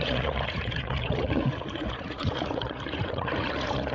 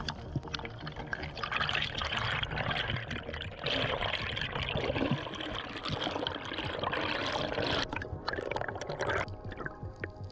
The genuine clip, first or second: second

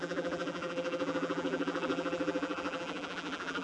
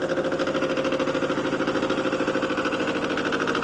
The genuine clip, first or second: second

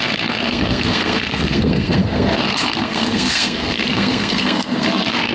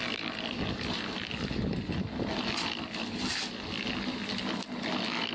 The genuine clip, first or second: second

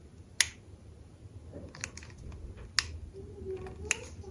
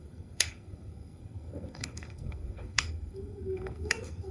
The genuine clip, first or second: first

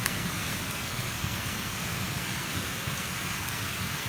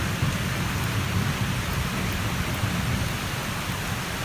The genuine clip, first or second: second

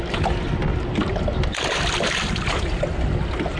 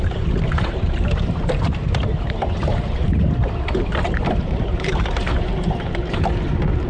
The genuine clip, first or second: first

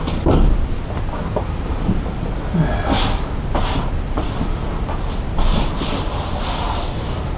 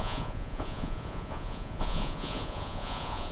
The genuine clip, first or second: first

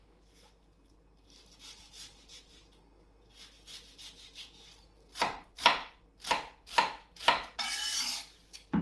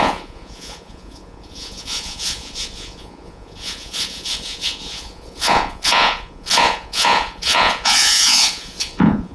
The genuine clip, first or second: first